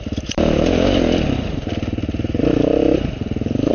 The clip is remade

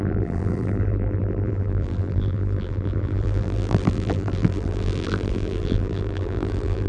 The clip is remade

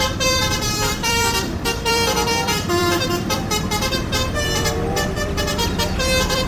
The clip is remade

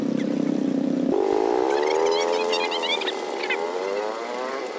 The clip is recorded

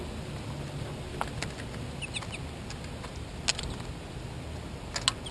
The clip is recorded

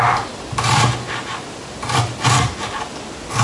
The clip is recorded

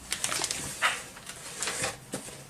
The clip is recorded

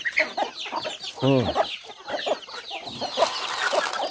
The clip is recorded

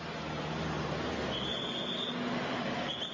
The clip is recorded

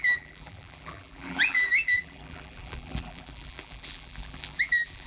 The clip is remade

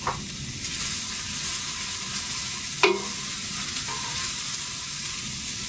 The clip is recorded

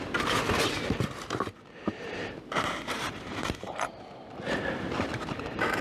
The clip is remade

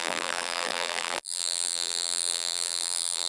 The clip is remade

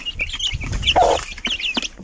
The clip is recorded